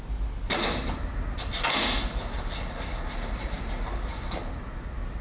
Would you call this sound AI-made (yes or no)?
no